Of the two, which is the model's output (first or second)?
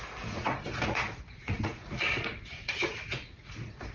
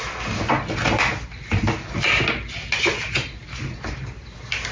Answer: first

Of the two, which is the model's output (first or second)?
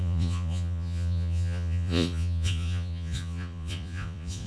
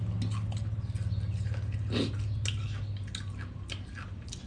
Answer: first